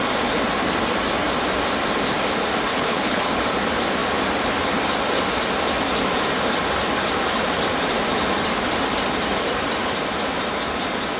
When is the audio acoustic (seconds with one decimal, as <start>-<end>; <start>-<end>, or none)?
0.0-2.7; 3.4-11.2